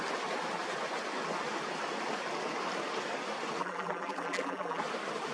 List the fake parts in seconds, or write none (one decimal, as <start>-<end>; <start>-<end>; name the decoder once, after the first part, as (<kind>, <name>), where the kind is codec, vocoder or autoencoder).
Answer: 3.6-4.8 (vocoder, BigVGAN v2)